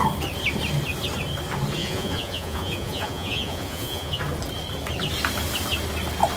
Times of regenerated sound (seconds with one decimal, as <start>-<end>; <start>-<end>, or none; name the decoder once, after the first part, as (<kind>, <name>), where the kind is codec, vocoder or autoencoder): 1.8-4.2 (vocoder, Vocos)